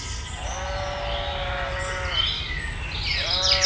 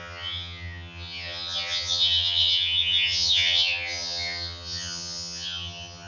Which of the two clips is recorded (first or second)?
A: first